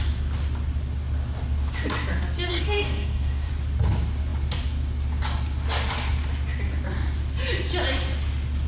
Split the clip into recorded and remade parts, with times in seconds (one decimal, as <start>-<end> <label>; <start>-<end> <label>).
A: 0.0-2.5 recorded; 2.5-3.5 remade; 3.5-8.7 recorded